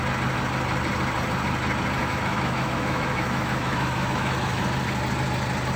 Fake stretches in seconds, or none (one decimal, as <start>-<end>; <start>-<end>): 2.0-4.6